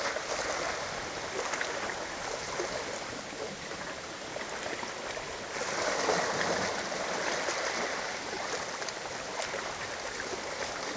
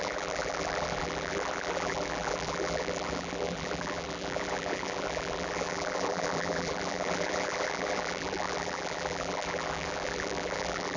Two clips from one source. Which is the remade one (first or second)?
second